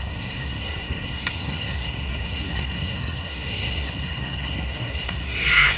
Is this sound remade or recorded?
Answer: remade